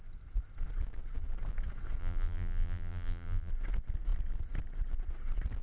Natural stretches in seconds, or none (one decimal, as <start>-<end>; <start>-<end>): 0.0-2.0; 3.5-5.6